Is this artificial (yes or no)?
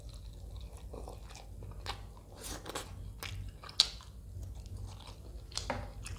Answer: no